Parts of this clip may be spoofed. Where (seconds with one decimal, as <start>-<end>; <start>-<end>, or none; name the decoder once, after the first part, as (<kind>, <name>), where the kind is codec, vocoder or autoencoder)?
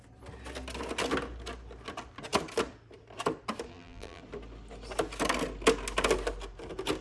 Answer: 3.7-4.2 (vocoder, BigVGAN v2)